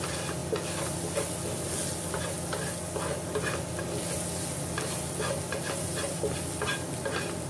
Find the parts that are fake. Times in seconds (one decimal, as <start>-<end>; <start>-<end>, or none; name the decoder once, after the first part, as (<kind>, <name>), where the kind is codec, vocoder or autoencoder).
none